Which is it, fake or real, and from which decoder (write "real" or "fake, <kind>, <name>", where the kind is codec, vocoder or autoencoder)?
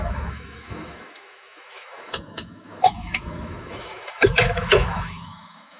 fake, autoencoder, DAC-VAE